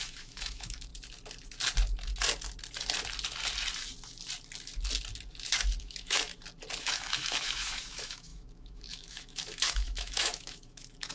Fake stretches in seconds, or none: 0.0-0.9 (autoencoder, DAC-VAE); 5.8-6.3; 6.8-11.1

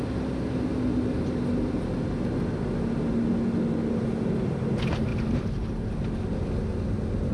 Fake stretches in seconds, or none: none

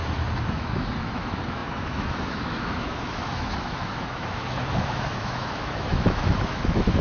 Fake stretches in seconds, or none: 0.5-7.0 (autoencoder, DAC-VAE)

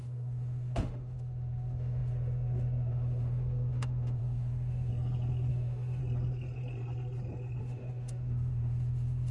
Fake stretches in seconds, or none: 0.0-4.9 (autoencoder, DAC-VAE); 5.5-6.0; 7.6-9.3

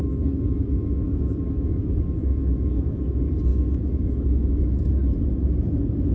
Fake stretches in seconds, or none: 0.0-3.0 (autoencoder, DAC-VAE); 3.5-4.9

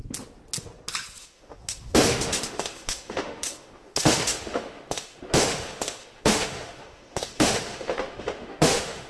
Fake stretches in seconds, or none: 1.2-9.1 (autoencoder, DAC-VAE)

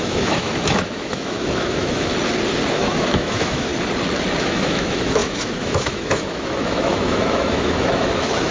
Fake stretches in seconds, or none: 0.0-2.1 (autoencoder, DAC-VAE); 2.7-3.7; 4.4-8.5

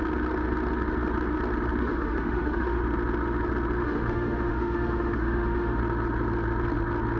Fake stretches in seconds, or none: 1.8-2.8 (autoencoder, DAC-VAE); 3.8-5.8